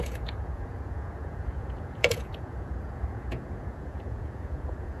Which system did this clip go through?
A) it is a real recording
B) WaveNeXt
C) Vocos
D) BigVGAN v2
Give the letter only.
C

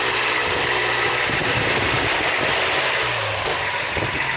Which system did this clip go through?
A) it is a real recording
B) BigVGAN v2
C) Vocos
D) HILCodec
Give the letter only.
B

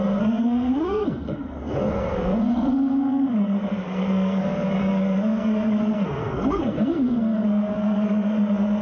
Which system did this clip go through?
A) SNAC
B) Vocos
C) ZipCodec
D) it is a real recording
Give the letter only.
A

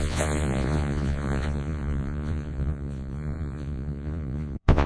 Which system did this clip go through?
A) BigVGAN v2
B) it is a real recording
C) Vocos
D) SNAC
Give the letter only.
C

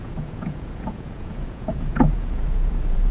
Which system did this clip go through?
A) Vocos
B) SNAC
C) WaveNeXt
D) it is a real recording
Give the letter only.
A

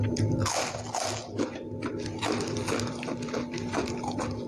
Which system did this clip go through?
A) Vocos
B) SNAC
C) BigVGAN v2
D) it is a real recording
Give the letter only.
D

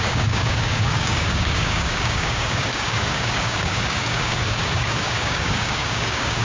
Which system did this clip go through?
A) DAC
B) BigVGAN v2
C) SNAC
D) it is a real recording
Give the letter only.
A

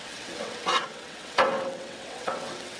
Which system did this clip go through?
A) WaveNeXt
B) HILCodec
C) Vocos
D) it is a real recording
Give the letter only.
A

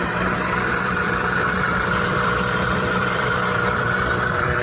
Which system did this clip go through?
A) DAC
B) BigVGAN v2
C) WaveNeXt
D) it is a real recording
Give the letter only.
B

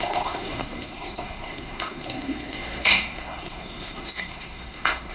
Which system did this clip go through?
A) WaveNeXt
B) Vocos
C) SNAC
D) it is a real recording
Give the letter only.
C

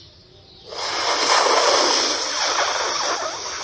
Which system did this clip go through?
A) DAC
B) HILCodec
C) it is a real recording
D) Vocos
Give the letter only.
C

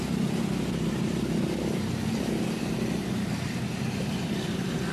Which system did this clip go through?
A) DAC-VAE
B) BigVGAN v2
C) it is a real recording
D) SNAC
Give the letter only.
C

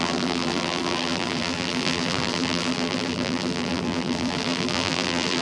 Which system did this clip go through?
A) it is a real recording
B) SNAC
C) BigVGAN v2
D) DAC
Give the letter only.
C